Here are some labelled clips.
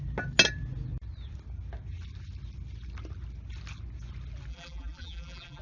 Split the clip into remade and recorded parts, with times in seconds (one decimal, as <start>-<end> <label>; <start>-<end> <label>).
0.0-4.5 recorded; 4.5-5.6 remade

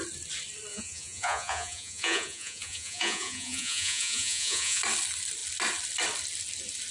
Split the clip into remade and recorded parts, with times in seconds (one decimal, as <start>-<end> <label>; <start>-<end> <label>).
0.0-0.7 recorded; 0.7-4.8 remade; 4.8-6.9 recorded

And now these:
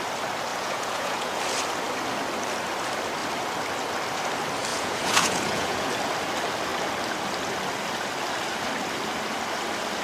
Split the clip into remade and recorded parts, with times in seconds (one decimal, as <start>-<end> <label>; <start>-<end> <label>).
0.0-0.5 recorded; 0.5-1.4 remade; 1.4-4.7 recorded; 4.7-5.9 remade; 5.9-10.0 recorded